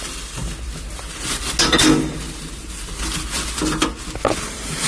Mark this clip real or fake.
real